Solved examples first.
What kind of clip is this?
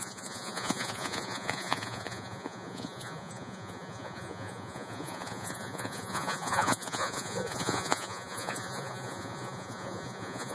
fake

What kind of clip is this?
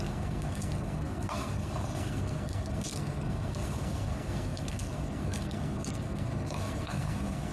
fake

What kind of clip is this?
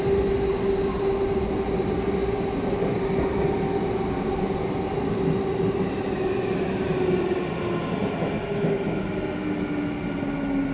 real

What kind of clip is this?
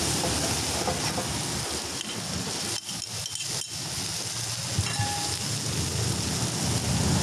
real